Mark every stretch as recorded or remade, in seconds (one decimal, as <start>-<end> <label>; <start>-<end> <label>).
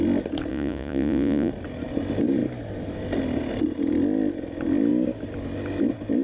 0.0-0.5 recorded; 0.5-1.5 remade; 1.5-6.2 recorded